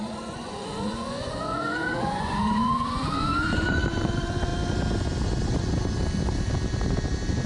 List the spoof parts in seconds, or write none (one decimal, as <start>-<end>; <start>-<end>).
0.0-4.5